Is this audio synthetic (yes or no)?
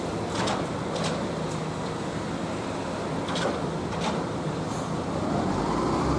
yes